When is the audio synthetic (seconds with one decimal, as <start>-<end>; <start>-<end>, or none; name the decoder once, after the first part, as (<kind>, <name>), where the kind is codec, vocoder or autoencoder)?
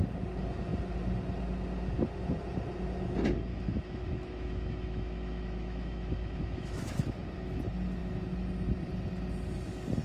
3.5-7.6 (autoencoder, DAC-VAE)